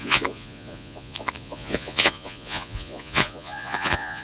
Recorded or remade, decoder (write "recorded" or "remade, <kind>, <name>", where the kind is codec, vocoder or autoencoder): remade, vocoder, Vocos